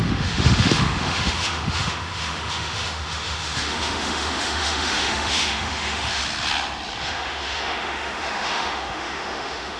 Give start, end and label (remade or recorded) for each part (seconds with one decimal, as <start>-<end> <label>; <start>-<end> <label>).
0.0-6.2 remade; 6.2-7.0 recorded; 7.0-9.8 remade